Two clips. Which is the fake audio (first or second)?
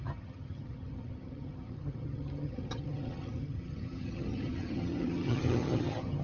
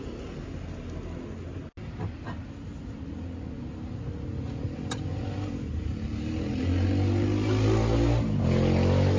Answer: first